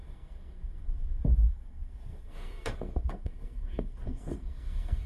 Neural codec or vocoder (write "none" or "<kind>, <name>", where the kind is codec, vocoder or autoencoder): codec, SNAC